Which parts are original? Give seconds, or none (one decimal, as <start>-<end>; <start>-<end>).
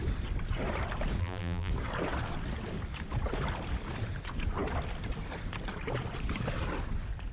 0.0-1.2; 1.7-7.3